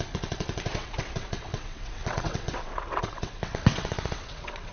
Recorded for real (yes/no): no